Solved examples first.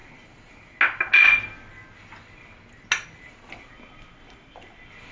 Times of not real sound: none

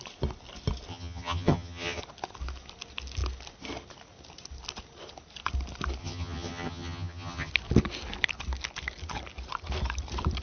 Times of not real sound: 0.9-2.0; 6.0-7.5

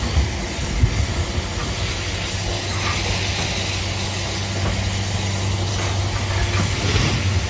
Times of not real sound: none

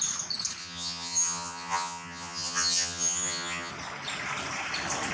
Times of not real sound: 0.6-3.7